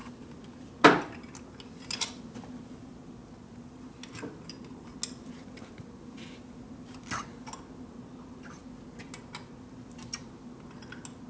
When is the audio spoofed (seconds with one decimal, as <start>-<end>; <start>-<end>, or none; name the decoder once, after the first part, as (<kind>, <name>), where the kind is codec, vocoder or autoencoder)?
none